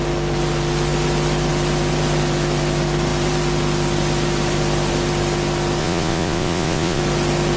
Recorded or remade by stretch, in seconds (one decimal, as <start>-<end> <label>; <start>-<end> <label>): 0.0-5.8 recorded; 5.8-7.0 remade; 7.0-7.6 recorded